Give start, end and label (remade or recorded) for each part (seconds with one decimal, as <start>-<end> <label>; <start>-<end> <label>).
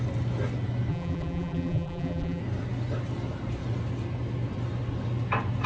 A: 0.0-0.9 recorded; 0.9-2.4 remade; 2.4-5.7 recorded